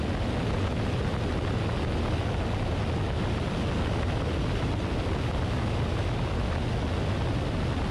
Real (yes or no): yes